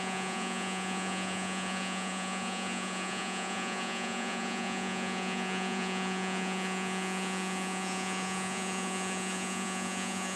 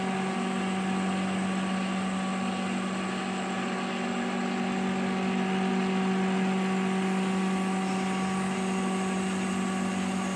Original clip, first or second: second